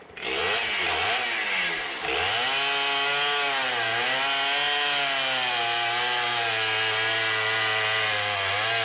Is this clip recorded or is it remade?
recorded